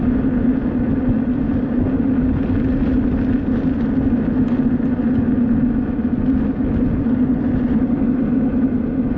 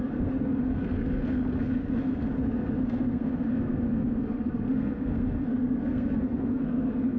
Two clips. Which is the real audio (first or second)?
first